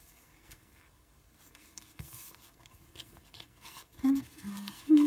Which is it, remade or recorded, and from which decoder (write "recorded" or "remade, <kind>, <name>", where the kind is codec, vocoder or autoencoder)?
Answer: remade, codec, SNAC